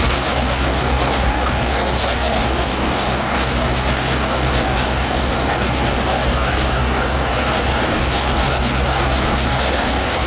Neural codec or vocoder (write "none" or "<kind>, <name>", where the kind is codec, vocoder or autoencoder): codec, DAC